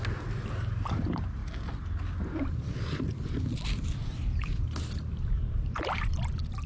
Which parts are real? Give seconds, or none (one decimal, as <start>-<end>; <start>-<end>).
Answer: 0.0-6.7